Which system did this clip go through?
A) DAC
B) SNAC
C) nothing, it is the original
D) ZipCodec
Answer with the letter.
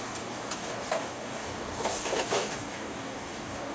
A